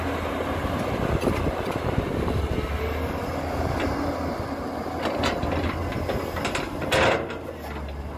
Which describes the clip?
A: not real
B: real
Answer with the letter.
B